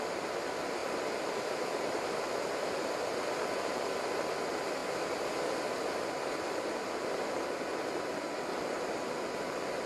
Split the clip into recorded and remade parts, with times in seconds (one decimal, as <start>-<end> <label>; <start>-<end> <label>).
0.0-0.8 recorded; 0.8-2.5 remade; 2.5-9.9 recorded